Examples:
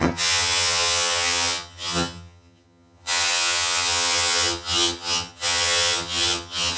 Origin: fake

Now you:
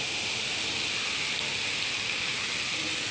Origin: real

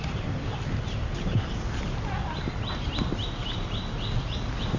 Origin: real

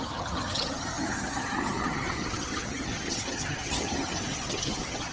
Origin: fake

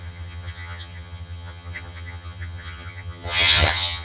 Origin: fake